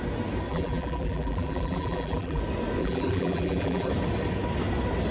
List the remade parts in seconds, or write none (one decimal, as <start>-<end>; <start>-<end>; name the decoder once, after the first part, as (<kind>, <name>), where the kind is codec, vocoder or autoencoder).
0.5-2.4 (vocoder, BigVGAN v2); 2.8-3.9